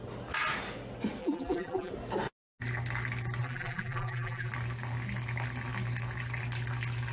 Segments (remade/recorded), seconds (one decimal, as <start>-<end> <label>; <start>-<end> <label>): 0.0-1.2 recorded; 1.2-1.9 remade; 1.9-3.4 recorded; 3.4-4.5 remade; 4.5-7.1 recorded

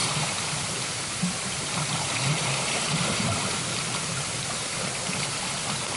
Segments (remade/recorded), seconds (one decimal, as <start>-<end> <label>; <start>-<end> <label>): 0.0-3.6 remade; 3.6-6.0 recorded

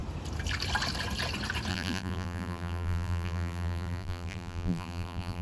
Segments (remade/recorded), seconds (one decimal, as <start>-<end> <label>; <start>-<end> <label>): 0.0-1.7 recorded; 1.7-5.4 remade

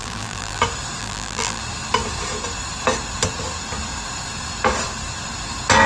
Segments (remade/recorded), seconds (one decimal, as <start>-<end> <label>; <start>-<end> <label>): 0.0-0.6 remade; 0.6-1.0 recorded; 1.0-1.6 remade; 1.6-5.9 recorded

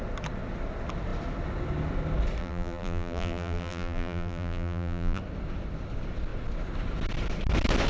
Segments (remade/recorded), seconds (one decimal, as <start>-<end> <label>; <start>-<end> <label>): 0.0-2.4 recorded; 2.4-5.2 remade; 5.2-7.9 recorded

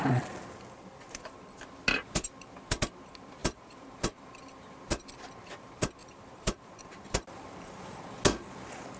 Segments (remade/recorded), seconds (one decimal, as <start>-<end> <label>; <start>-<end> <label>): 0.0-3.4 recorded; 3.4-4.3 remade; 4.3-6.0 recorded; 6.0-8.0 remade; 8.0-9.0 recorded

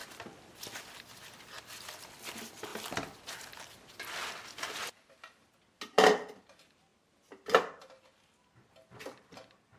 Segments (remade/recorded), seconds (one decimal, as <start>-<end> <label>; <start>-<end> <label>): 0.0-9.8 recorded

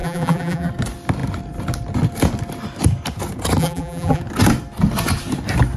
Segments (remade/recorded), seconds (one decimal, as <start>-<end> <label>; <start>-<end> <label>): 0.0-0.7 remade; 0.7-3.6 recorded; 3.6-4.2 remade; 4.2-5.8 recorded